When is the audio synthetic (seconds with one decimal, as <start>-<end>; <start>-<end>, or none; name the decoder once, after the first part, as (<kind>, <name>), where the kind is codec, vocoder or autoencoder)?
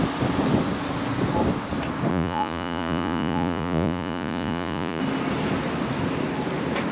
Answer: 2.1-5.0 (vocoder, Vocos)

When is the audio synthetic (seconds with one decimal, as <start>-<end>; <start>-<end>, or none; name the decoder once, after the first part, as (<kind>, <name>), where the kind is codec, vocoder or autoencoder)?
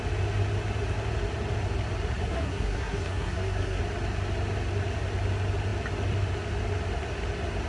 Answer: 2.2-3.8 (codec, SNAC)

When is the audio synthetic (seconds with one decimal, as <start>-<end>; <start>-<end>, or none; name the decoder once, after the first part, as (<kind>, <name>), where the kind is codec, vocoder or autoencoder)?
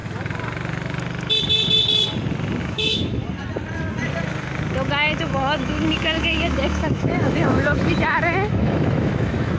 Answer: 2.6-3.2 (autoencoder, DAC-VAE); 5.2-9.6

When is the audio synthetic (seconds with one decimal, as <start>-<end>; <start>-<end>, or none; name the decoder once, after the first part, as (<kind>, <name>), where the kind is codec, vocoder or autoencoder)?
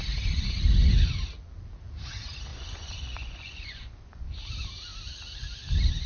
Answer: 2.5-4.4 (vocoder, Vocos)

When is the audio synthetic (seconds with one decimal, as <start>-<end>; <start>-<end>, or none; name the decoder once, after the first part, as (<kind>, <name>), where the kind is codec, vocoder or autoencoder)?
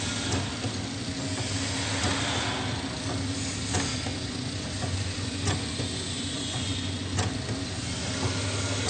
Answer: 4.1-7.3 (vocoder, Vocos)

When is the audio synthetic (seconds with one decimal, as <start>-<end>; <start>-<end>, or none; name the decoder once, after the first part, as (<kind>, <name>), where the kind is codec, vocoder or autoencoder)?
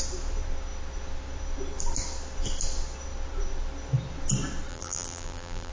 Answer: 4.7-5.7 (vocoder, BigVGAN v2)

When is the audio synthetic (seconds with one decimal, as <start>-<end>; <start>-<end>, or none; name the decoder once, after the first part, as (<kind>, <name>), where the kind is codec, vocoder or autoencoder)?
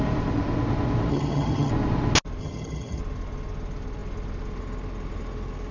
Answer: 1.1-1.7 (vocoder, HiFi-GAN); 2.4-3.0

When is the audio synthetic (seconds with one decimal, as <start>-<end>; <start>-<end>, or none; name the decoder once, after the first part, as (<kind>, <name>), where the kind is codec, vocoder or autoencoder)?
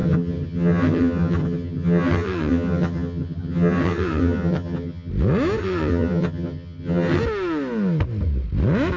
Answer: 0.0-5.1 (vocoder, HiFi-GAN); 5.6-7.2